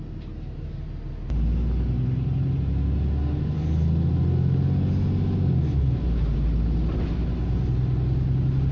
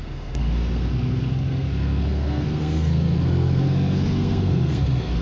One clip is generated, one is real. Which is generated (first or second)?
second